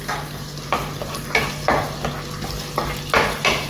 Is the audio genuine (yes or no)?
yes